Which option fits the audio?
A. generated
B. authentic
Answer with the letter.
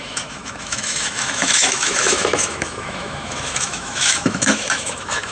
A